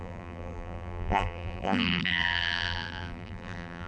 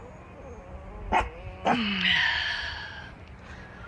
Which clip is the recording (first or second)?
second